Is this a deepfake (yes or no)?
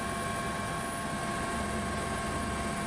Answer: no